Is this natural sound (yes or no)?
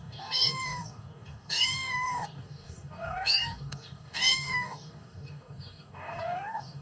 no